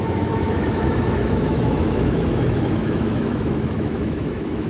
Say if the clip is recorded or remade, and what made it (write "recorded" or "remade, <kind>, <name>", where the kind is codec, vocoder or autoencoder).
remade, autoencoder, DAC-VAE